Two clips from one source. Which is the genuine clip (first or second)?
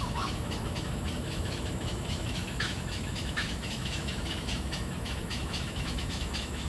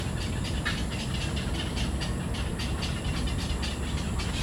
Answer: second